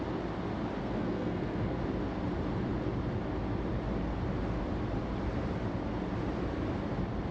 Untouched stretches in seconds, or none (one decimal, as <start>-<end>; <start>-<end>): 0.0-0.8; 1.8-7.3